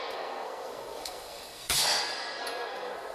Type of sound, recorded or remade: remade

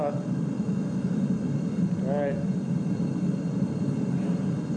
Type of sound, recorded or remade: recorded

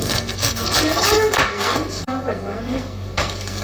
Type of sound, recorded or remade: remade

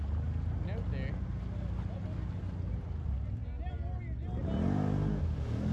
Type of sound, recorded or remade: recorded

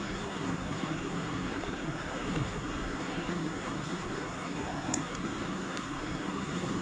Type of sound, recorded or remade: remade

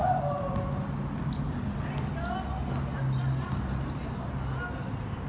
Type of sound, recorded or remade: recorded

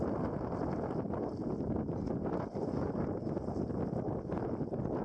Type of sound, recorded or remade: recorded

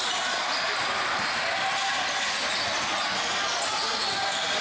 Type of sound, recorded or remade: recorded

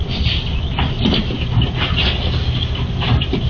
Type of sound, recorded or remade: recorded